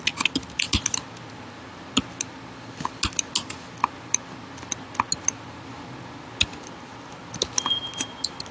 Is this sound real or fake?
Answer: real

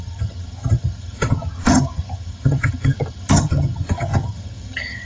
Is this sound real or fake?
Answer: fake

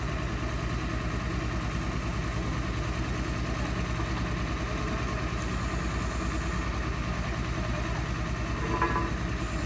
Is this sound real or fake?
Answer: real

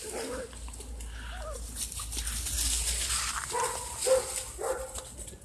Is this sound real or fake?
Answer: real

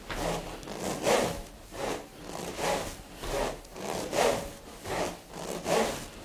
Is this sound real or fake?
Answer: real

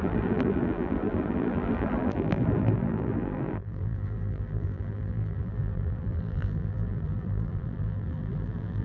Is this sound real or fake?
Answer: fake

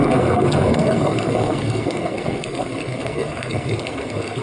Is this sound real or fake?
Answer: fake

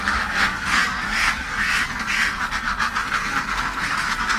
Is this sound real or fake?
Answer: fake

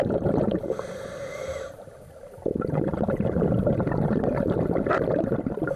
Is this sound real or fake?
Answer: fake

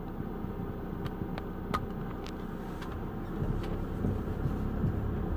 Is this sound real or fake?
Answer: real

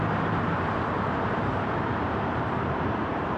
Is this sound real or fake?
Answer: fake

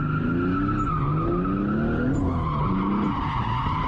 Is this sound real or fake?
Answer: real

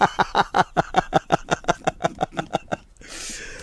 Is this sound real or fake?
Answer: real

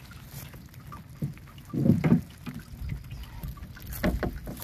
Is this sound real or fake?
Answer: real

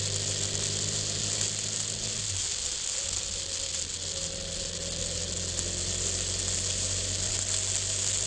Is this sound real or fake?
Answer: real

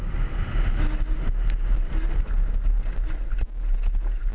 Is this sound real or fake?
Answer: real